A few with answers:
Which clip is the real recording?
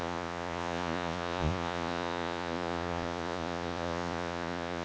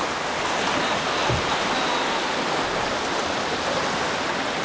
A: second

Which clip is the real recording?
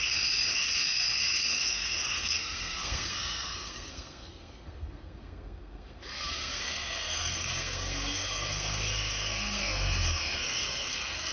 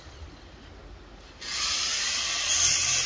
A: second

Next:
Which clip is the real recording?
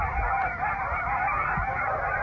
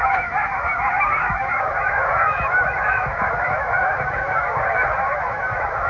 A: first